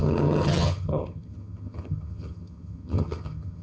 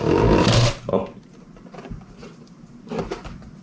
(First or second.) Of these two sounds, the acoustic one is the second